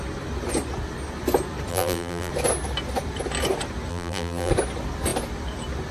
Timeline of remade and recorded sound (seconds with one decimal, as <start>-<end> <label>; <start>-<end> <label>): 0.0-1.7 recorded; 1.7-2.3 remade; 2.3-3.9 recorded; 3.9-4.5 remade; 4.5-5.9 recorded